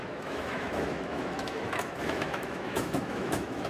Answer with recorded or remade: remade